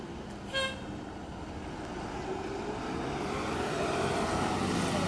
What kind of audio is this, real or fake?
real